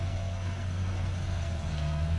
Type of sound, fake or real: fake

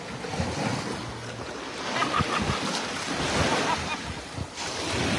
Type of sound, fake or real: real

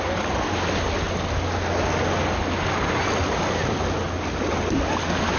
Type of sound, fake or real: real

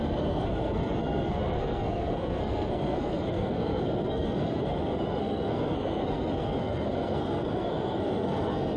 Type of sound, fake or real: fake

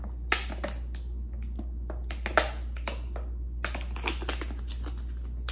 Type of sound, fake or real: real